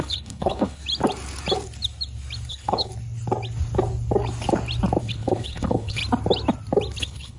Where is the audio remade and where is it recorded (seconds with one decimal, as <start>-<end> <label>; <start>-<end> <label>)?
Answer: 0.0-0.8 remade; 0.8-2.5 recorded; 2.5-2.9 remade; 2.9-5.0 recorded; 5.0-6.0 remade; 6.0-7.0 recorded; 7.0-7.4 remade